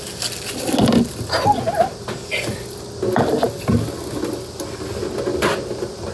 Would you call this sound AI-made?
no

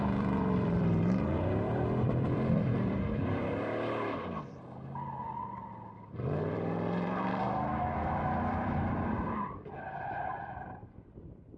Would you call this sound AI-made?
yes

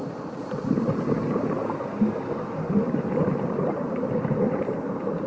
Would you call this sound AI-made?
yes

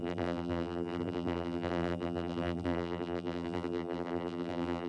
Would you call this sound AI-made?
yes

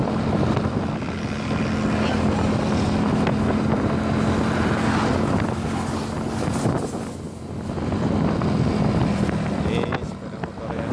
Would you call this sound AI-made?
no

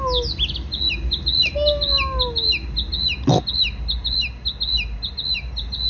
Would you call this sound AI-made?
no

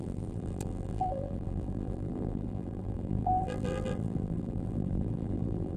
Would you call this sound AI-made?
yes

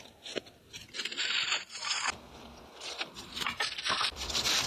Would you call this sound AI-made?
yes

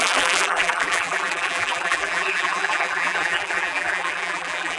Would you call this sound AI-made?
yes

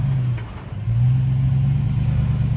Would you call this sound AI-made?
no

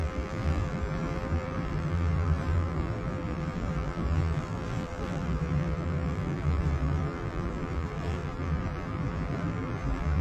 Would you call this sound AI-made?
yes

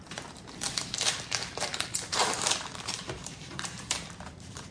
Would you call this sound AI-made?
yes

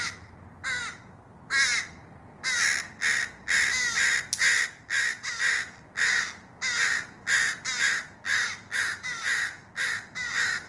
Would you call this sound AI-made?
no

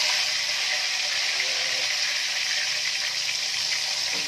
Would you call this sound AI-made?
yes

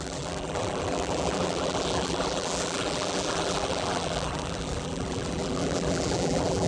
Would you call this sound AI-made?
yes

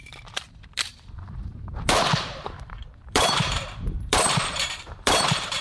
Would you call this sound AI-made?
yes